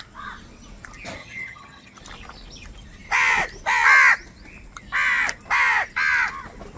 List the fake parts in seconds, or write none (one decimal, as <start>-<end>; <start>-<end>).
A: 1.2-2.0